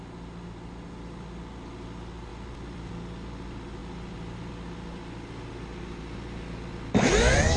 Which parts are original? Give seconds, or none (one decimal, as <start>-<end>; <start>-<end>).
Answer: 0.0-2.3; 2.9-7.6